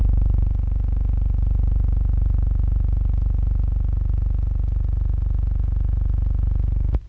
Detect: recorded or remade recorded